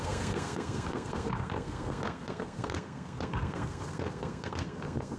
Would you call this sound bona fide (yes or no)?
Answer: no